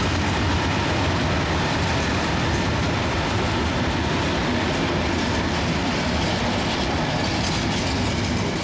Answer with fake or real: real